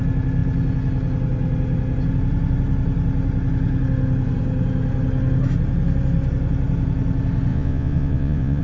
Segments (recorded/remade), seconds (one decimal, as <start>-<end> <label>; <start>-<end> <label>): 0.0-7.5 recorded; 7.5-8.6 remade